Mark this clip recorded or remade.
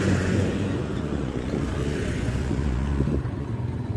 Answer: remade